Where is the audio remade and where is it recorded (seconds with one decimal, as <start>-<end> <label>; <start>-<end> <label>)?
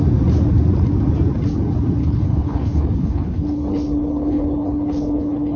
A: 0.0-2.0 recorded; 2.0-5.6 remade